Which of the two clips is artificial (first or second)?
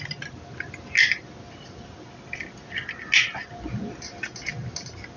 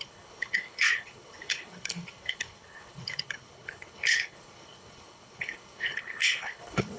second